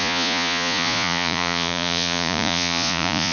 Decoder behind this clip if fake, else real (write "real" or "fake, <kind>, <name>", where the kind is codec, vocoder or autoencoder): fake, vocoder, Vocos